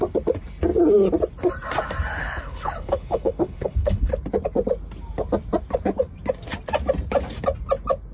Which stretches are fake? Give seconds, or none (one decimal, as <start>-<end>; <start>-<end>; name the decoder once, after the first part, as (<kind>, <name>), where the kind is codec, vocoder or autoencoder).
2.2-4.1 (codec, HILCodec)